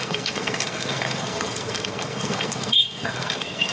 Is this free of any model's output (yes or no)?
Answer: no